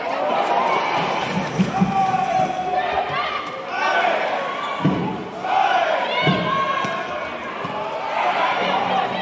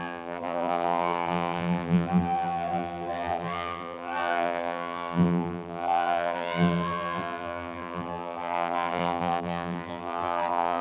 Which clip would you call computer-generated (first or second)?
second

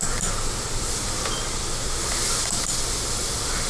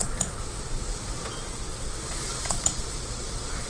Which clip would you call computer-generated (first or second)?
second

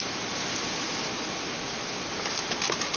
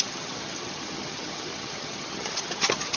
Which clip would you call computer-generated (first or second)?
second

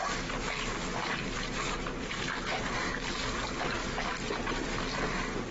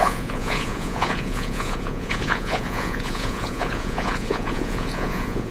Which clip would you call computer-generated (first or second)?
second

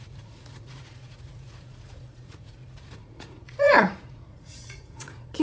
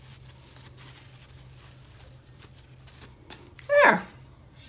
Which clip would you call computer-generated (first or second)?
first